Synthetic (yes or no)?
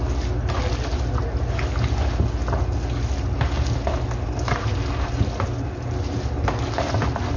no